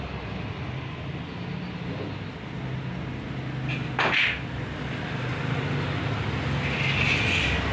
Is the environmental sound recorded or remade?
recorded